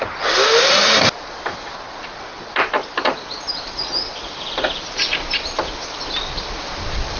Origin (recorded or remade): recorded